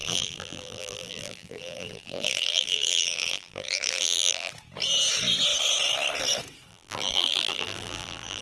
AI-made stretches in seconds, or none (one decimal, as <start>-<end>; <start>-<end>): 0.0-4.5; 6.7-8.4